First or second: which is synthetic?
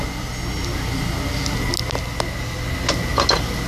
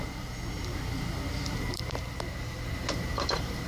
second